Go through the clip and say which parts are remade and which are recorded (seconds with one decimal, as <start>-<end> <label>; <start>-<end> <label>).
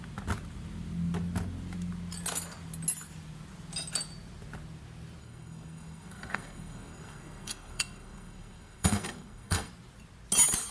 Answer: 0.0-5.2 recorded; 5.2-9.7 remade; 9.7-10.7 recorded